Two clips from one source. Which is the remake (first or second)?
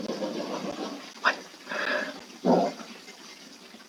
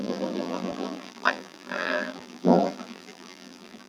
second